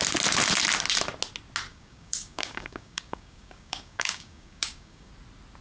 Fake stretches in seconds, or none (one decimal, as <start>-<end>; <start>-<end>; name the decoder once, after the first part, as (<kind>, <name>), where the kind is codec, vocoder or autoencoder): 1.7-5.1 (codec, DAC)